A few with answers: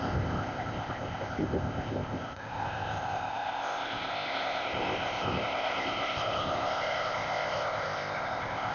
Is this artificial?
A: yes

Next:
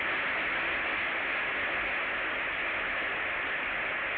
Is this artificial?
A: no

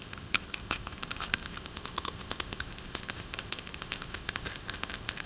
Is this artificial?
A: yes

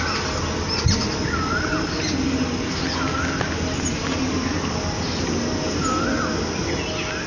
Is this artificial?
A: no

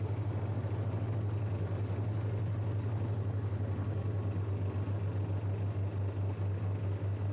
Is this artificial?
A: no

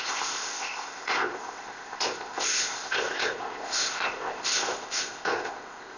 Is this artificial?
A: yes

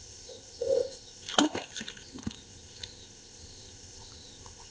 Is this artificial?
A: yes